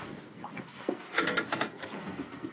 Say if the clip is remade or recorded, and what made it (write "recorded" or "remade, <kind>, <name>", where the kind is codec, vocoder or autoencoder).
remade, codec, SNAC